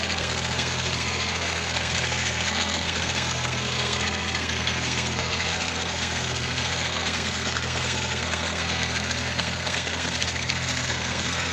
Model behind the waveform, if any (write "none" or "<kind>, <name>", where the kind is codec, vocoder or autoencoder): codec, SNAC